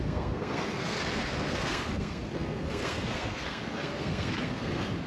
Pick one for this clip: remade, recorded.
remade